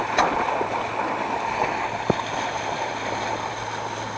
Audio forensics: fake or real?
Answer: real